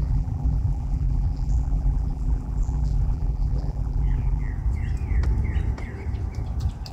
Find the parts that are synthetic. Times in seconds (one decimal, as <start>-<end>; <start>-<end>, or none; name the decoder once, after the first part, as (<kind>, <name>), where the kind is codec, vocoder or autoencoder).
0.0-4.5 (vocoder, BigVGAN v2)